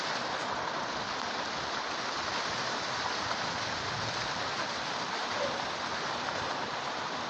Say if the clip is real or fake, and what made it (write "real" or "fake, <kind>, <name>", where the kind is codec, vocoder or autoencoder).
real